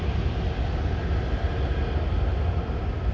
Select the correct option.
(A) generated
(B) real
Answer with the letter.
B